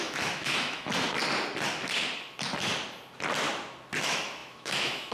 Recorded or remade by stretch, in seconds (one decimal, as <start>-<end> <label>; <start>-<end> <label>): 0.0-0.9 remade; 0.9-4.0 recorded; 4.0-5.1 remade